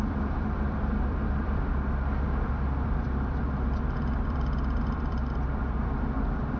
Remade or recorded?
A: remade